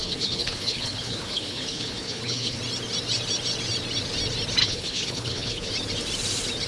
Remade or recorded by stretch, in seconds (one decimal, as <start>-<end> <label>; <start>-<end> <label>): 0.0-2.6 remade; 2.6-4.6 recorded; 4.6-5.7 remade; 5.7-6.7 recorded